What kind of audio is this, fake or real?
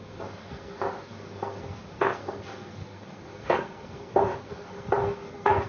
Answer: fake